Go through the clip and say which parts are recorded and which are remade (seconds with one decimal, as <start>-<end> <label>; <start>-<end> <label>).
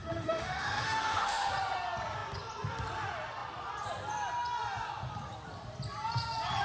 0.0-1.5 remade; 1.5-6.6 recorded